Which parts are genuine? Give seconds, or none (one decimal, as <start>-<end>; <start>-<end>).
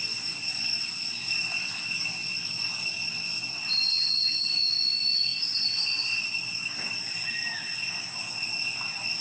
0.0-3.9; 4.5-9.2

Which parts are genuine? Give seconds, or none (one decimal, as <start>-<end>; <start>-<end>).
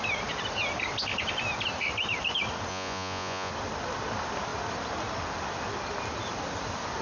0.0-2.7; 3.5-7.0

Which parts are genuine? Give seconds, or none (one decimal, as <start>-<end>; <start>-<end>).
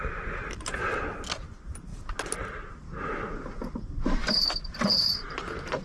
0.0-5.8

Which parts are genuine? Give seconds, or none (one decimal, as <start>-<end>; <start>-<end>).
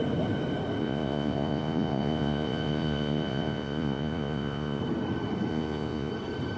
0.0-0.8; 4.8-5.5; 6.1-6.6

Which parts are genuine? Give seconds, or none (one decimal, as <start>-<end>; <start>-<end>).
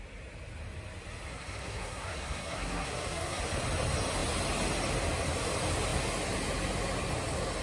0.0-1.3; 3.4-7.6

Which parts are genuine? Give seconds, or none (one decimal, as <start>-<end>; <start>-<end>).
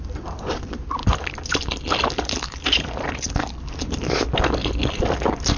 0.0-5.6